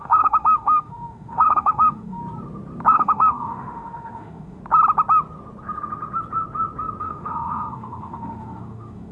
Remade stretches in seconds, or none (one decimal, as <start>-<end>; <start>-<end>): 0.0-2.2; 2.9-4.6; 7.0-9.1